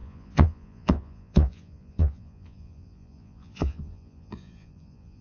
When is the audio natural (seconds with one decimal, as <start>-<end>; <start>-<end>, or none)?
none

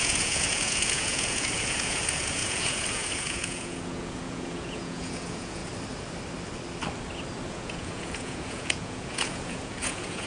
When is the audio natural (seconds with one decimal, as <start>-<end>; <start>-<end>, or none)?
5.6-7.5

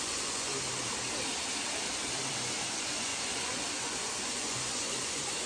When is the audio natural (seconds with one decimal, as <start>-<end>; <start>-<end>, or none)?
0.5-2.3

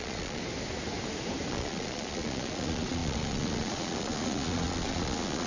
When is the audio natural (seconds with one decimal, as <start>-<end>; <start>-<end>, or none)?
0.4-1.5

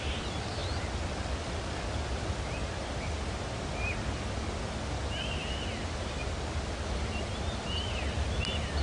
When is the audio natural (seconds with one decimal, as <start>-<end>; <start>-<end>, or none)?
0.0-8.8

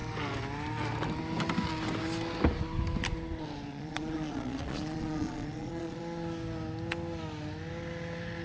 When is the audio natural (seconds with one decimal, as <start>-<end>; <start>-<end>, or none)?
0.0-3.7; 6.0-8.4

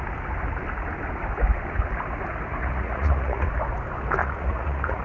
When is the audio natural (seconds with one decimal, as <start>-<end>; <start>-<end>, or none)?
0.0-2.6; 3.5-4.2